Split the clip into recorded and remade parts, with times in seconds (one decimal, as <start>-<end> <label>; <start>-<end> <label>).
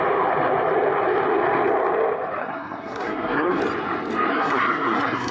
0.0-2.4 recorded; 2.4-3.6 remade; 3.6-4.3 recorded; 4.3-5.3 remade